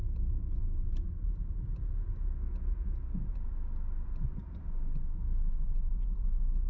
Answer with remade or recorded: recorded